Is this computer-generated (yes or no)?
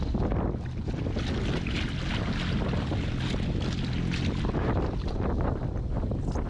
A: no